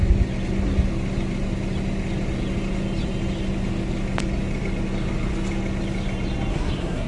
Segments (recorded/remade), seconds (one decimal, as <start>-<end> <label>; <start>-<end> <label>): 0.0-6.5 recorded; 6.5-7.1 remade